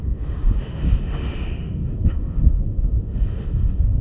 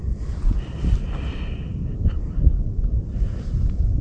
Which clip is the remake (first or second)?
first